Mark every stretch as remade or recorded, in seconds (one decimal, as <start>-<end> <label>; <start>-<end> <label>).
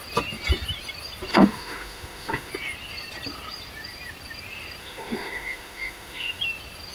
0.0-1.3 recorded; 1.3-2.5 remade; 2.5-4.8 recorded; 4.8-6.4 remade; 6.4-6.9 recorded